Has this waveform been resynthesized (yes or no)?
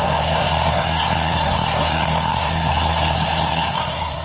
yes